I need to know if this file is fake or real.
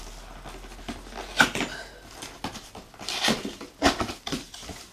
real